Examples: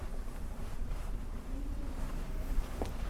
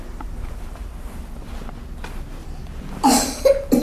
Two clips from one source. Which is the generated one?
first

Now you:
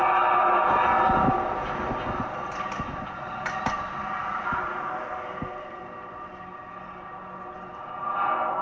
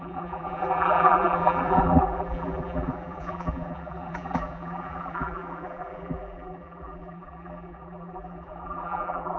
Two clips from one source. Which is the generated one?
second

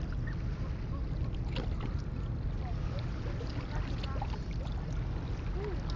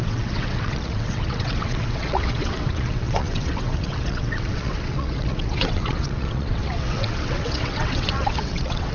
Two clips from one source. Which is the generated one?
second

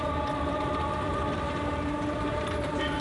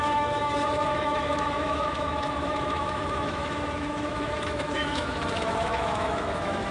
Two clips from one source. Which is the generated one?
second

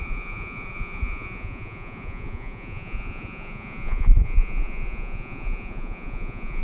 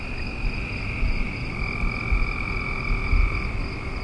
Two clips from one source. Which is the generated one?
first